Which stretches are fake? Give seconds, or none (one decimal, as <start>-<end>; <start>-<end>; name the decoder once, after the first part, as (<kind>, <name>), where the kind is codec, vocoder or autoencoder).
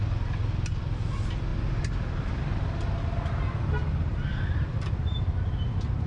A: none